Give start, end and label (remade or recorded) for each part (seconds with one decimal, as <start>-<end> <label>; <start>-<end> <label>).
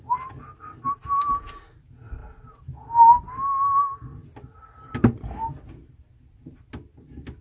0.0-7.4 recorded